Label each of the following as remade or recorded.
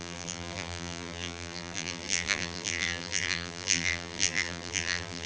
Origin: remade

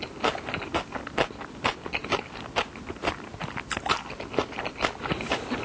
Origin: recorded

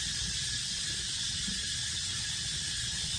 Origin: recorded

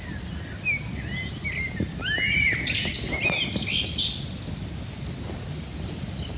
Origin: recorded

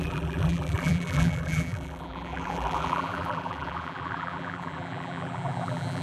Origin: remade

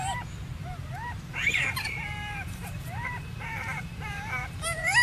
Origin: remade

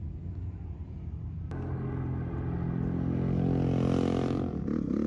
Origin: recorded